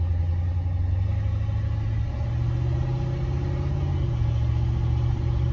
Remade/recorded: recorded